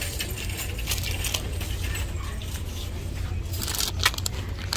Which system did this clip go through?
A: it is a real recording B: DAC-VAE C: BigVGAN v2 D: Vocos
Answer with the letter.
A